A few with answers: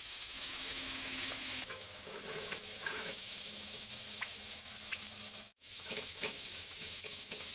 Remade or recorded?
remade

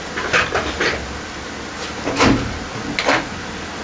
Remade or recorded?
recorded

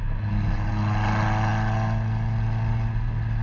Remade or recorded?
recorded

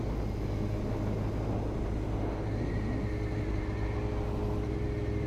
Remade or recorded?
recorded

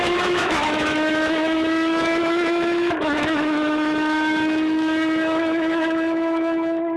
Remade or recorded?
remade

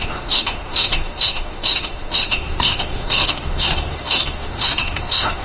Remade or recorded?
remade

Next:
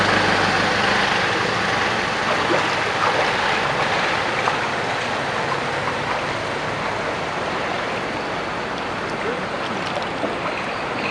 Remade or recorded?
recorded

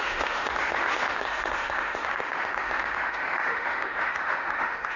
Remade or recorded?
remade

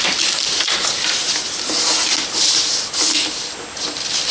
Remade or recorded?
recorded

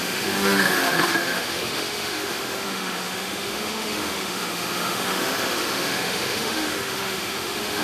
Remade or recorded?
remade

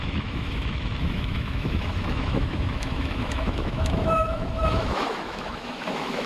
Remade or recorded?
remade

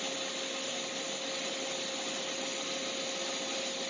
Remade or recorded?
recorded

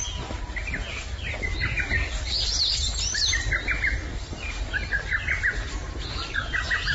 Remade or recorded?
recorded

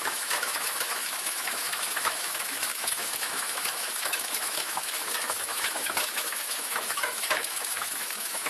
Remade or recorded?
remade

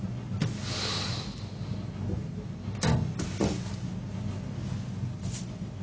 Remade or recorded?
recorded